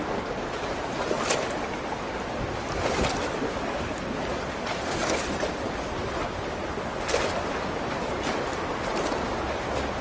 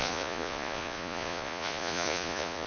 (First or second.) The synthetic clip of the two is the second